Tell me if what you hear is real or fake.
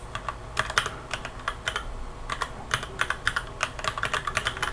real